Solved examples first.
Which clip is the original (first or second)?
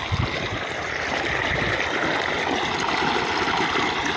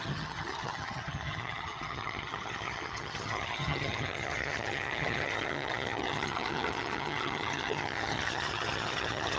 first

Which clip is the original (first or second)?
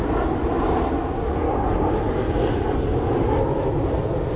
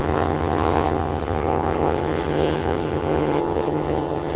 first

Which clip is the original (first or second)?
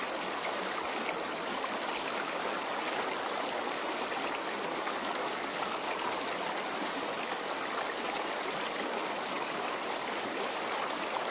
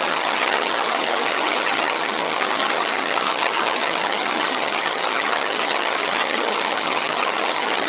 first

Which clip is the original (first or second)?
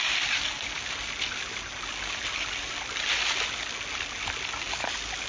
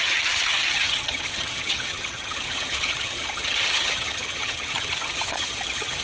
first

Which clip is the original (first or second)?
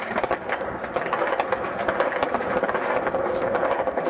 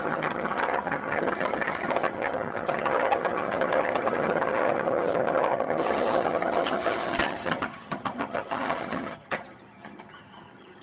first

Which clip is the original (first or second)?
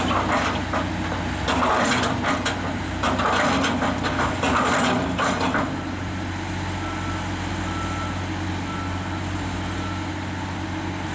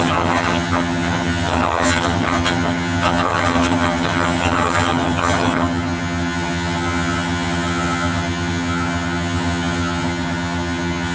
first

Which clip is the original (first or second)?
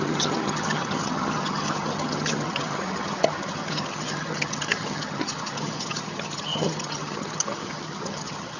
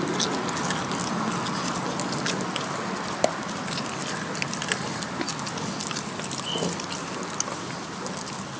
second